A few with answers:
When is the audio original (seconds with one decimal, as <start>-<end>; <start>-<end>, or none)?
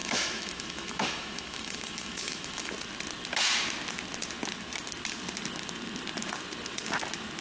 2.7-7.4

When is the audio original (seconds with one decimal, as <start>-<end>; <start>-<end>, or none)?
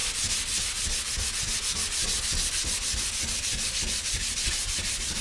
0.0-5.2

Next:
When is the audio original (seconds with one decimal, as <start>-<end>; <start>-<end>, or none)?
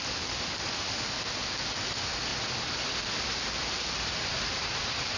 0.0-5.2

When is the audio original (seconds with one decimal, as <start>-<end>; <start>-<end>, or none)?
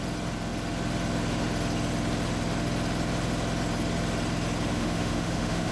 0.0-4.7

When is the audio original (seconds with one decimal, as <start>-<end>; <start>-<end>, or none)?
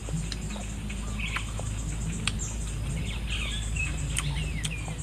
0.0-5.0